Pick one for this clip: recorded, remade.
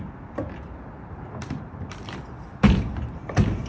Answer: recorded